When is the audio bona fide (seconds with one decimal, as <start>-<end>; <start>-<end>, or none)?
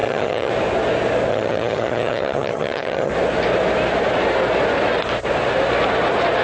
0.5-1.3; 3.1-6.4